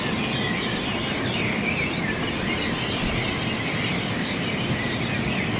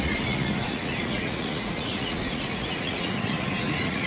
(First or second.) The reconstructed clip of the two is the second